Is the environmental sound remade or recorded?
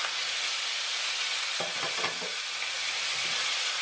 recorded